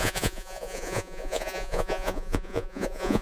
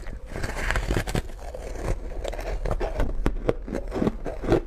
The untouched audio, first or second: second